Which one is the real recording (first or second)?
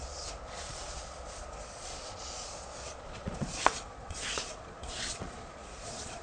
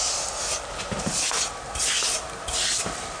second